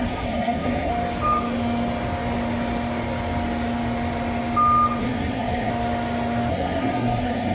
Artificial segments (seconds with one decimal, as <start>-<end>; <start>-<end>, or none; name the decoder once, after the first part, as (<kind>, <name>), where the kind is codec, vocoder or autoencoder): 0.0-0.9 (codec, SNAC); 5.0-5.7; 6.5-7.5